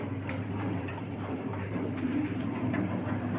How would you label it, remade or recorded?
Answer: remade